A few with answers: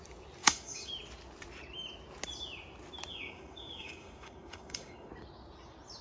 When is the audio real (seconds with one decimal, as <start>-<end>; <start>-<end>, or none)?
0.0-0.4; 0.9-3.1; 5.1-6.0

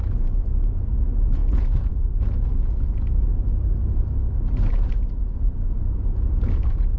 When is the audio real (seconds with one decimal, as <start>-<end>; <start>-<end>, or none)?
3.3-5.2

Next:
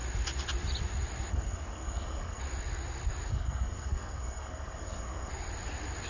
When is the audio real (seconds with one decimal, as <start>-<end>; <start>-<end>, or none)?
0.0-1.3; 2.4-3.3; 5.3-6.1

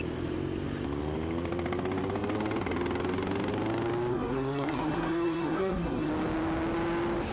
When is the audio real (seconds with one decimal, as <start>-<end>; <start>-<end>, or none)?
0.0-4.1; 6.1-7.3